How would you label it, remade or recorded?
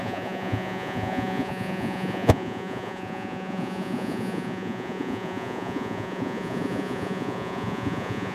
remade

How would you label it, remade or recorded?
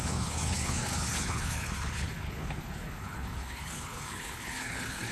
remade